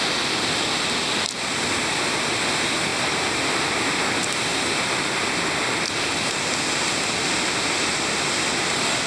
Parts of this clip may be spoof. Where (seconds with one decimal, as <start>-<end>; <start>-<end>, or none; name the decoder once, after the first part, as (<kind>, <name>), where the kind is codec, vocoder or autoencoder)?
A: none